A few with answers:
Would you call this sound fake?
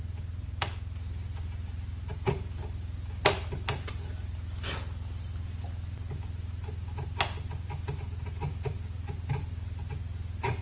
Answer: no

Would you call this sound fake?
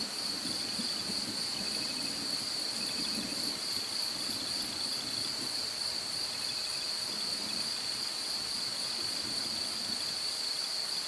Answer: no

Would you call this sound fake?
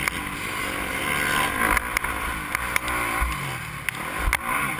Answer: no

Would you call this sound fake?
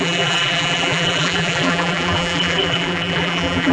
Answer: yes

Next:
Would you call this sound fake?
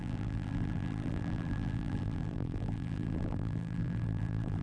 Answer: yes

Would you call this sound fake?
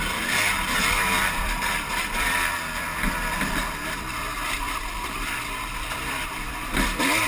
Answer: yes